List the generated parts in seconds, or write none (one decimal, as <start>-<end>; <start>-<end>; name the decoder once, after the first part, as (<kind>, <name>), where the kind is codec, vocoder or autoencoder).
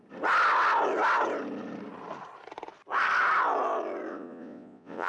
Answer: 4.1-5.1 (vocoder, Vocos)